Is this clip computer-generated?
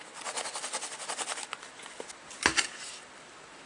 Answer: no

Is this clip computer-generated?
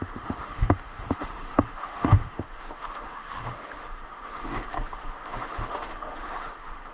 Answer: yes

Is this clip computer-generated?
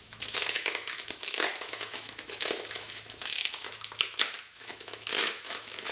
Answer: yes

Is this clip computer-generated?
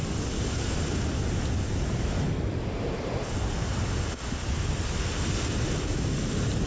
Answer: no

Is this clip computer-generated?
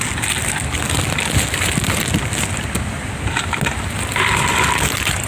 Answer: no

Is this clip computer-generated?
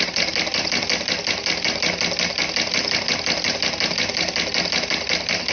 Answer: no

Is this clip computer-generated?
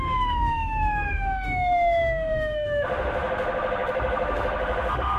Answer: yes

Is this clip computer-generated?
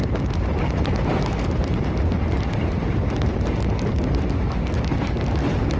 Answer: no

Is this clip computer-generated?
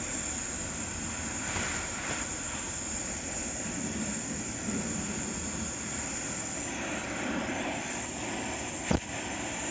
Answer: no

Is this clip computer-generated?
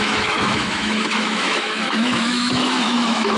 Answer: yes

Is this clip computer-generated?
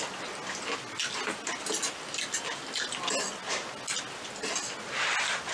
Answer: no